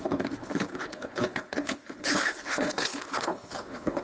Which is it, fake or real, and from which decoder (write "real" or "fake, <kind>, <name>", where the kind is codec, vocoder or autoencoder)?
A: fake, codec, HILCodec